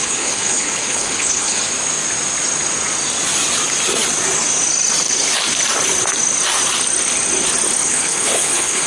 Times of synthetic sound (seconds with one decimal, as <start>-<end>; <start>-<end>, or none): 0.0-1.6; 7.8-8.9